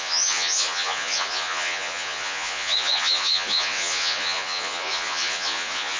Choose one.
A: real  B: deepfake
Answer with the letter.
B